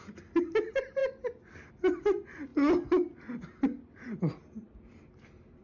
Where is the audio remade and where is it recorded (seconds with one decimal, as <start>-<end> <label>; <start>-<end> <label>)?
0.0-5.6 recorded